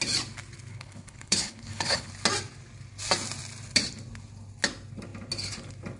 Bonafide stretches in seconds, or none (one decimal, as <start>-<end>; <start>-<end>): 0.0-0.7; 2.1-6.0